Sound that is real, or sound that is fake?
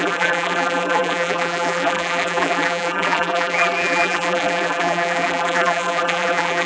fake